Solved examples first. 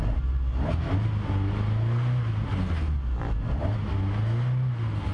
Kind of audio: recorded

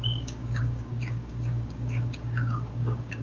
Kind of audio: remade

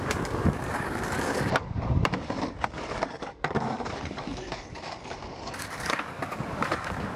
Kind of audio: remade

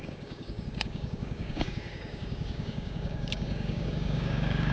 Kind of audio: remade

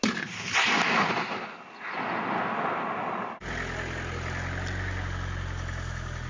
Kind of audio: recorded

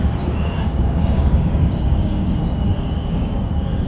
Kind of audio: remade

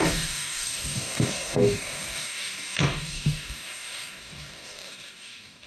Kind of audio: remade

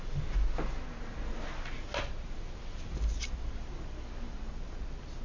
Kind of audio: recorded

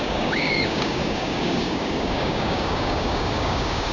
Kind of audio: remade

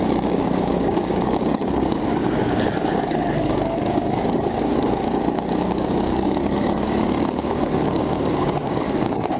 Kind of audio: remade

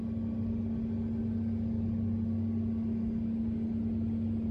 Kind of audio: recorded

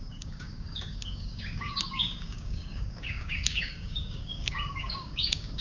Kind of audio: remade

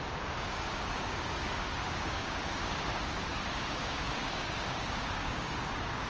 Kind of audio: remade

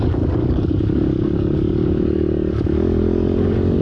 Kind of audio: remade